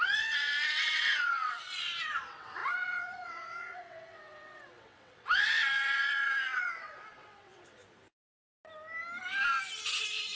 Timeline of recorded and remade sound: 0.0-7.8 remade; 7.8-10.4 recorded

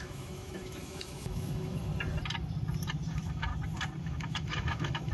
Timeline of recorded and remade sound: 0.0-1.9 remade; 1.9-3.1 recorded; 3.1-3.5 remade; 3.5-4.0 recorded; 4.0-5.1 remade

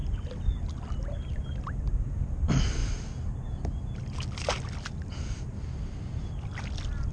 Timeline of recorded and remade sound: 0.0-7.1 recorded

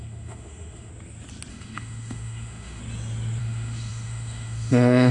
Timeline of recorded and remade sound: 0.0-0.9 remade; 0.9-1.5 recorded; 1.5-2.8 remade; 2.8-3.4 recorded; 3.4-5.1 remade

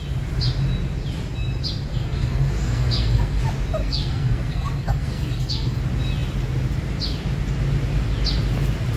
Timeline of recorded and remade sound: 0.0-1.9 recorded; 1.9-3.4 remade; 3.4-3.8 recorded; 3.8-5.8 remade; 5.8-9.0 recorded

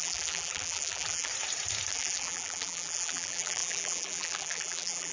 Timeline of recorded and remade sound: 0.0-1.3 remade; 1.3-1.9 recorded; 1.9-5.1 remade